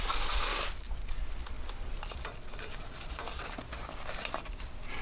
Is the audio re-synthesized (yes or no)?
no